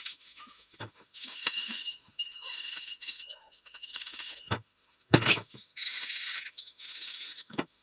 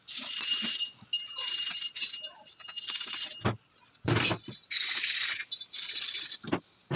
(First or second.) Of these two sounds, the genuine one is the second